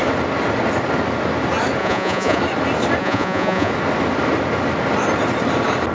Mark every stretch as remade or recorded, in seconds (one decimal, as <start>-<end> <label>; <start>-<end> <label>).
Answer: 0.0-1.8 recorded; 1.8-2.4 remade; 2.4-3.0 recorded; 3.0-3.7 remade; 3.7-5.9 recorded